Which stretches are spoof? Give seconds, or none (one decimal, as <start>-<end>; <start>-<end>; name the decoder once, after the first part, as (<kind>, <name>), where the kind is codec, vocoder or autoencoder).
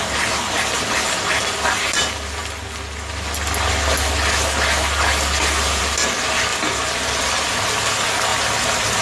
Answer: 6.5-7.2 (vocoder, BigVGAN v2); 8.3-9.0